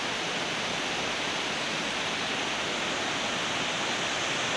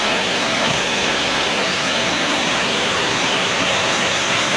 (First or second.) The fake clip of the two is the second